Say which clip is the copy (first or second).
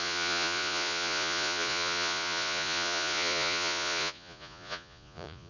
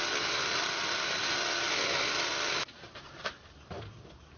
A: first